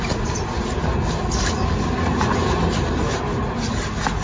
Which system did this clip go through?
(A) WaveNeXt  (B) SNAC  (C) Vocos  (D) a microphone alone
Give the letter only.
D